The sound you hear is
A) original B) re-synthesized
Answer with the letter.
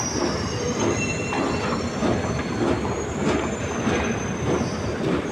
A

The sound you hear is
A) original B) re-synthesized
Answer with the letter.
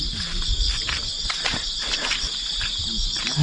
A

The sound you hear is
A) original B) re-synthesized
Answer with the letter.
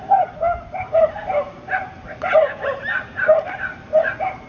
A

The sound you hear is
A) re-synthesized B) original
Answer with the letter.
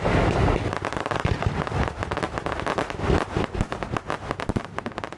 B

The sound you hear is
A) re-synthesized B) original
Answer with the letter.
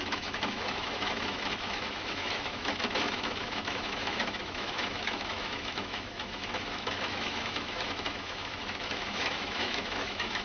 A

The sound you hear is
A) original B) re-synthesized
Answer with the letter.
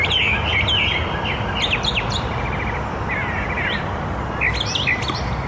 A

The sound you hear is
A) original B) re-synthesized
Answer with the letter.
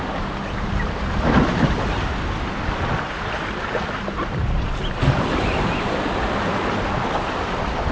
A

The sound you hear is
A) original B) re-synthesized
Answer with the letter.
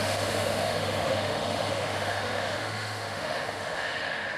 B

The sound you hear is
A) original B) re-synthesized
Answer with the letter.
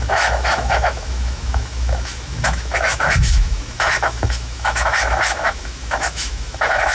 B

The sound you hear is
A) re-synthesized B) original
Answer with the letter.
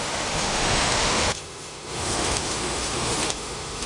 A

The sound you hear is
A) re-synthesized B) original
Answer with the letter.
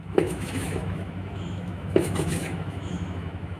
A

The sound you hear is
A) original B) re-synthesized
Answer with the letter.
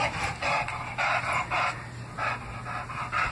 A